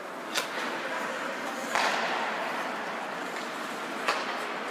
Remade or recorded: recorded